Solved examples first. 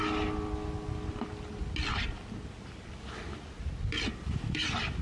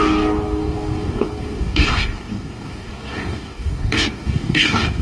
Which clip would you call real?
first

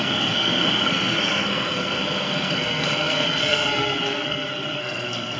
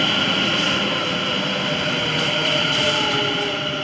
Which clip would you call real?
second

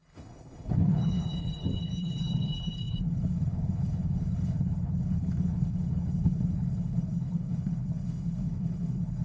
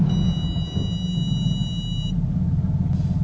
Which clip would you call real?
second